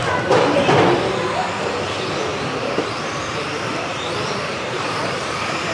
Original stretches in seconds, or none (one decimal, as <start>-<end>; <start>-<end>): 0.0-2.3; 3.9-4.5

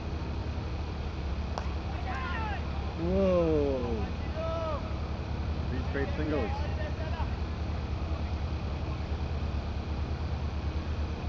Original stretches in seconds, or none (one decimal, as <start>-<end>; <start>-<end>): 0.0-0.4; 1.3-3.8; 6.3-6.7; 8.8-11.3